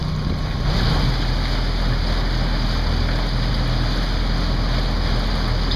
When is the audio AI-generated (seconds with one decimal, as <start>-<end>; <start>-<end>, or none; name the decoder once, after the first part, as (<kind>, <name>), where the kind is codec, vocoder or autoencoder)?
none